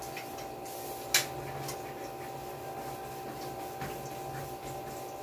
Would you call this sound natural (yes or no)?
yes